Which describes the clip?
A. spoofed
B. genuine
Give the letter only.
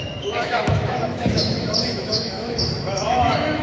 A